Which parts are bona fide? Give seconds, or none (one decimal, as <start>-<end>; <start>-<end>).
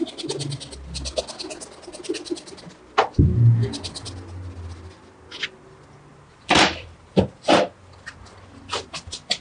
0.0-6.1; 7.2-9.4